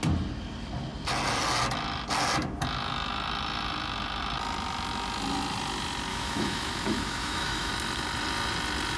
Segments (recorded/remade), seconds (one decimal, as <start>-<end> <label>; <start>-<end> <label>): 0.0-6.1 recorded; 6.1-7.7 remade; 7.7-9.0 recorded